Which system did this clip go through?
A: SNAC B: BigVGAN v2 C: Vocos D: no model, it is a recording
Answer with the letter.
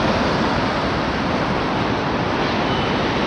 D